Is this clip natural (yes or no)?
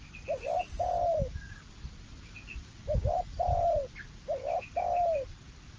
yes